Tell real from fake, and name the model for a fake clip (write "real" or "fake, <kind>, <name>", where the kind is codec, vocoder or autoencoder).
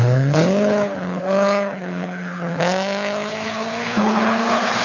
fake, codec, HILCodec